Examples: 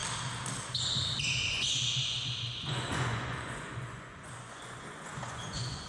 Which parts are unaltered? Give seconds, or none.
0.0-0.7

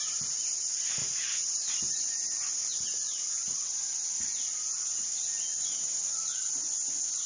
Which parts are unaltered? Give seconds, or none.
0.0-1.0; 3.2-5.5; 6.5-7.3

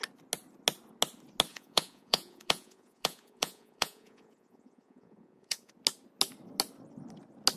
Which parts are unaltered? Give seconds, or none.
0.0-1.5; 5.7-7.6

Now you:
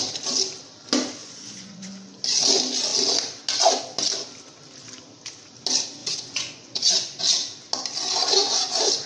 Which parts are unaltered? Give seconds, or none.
0.0-1.2; 1.9-6.0; 7.2-9.1